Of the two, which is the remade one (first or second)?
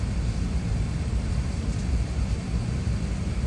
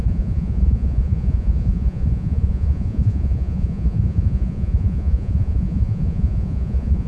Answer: second